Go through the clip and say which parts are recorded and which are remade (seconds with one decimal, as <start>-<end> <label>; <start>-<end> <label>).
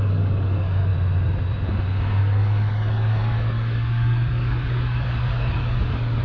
0.0-0.9 remade; 0.9-2.2 recorded; 2.2-6.2 remade